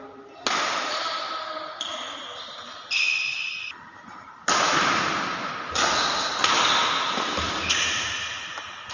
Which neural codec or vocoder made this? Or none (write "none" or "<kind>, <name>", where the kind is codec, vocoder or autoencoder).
none